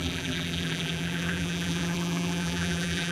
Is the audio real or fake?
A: fake